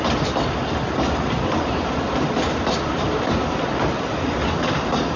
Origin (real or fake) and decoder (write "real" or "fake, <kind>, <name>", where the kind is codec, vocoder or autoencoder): real